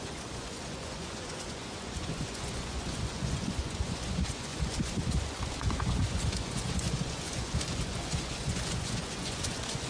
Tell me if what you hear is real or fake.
fake